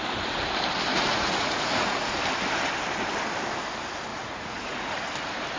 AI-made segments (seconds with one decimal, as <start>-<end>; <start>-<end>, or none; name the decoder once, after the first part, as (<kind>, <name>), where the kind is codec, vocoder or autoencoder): 0.9-2.2 (vocoder, Vocos); 4.1-5.1